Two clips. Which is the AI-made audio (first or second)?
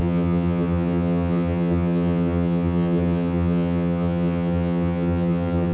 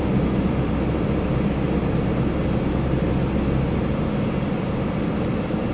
first